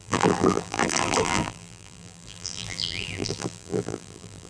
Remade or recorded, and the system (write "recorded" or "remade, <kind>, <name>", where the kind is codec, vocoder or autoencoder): remade, vocoder, BigVGAN v2